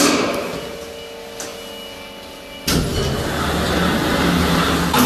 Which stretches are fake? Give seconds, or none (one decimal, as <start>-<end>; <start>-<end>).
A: none